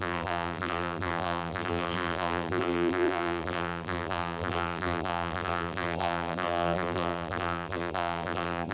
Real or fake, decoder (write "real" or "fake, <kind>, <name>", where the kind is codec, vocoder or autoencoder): fake, vocoder, BigVGAN v2